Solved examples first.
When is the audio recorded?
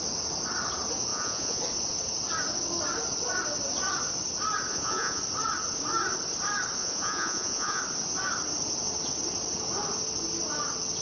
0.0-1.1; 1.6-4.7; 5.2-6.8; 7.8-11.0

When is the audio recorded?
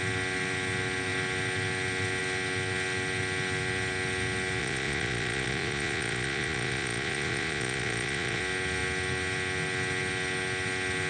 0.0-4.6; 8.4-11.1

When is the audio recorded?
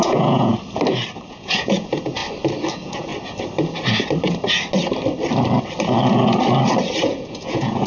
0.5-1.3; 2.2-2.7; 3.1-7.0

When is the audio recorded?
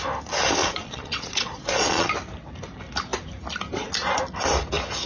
0.0-0.6; 2.1-5.1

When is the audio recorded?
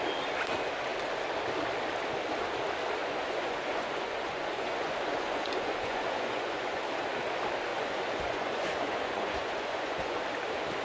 0.0-3.0; 6.8-7.7; 10.2-10.8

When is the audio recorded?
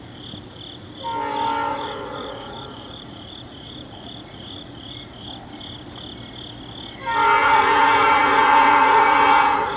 0.0-1.7; 5.1-7.4